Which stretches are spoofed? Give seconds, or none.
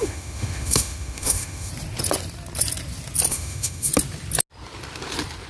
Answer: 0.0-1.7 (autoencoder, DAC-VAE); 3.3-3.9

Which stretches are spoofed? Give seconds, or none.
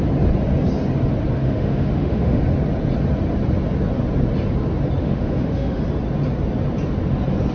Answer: 1.4-2.4 (autoencoder, DAC-VAE); 5.0-5.8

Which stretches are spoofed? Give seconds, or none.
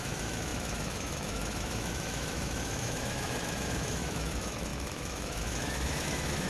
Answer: 0.0-6.5 (autoencoder, DAC-VAE)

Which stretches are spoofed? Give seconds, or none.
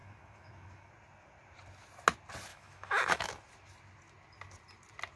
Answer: 0.0-0.9 (autoencoder, DAC-VAE); 2.5-3.3